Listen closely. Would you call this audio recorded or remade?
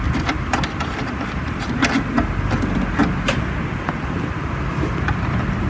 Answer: recorded